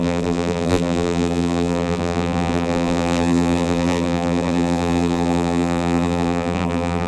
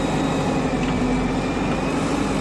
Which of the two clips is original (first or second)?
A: second